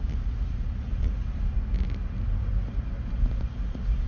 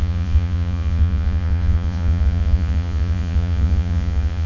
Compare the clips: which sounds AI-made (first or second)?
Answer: second